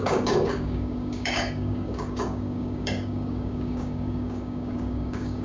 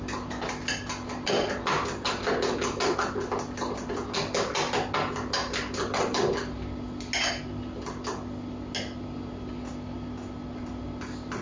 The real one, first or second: second